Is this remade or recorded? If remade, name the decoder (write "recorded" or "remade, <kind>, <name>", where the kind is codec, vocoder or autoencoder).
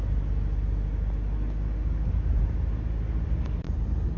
recorded